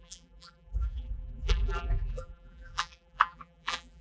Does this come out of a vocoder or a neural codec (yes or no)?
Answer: yes